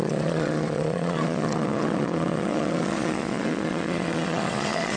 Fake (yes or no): yes